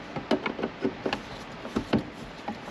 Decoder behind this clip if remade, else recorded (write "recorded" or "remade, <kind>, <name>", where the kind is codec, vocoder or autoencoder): recorded